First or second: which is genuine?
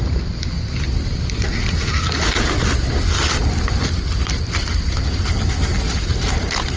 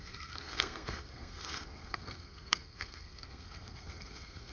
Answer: first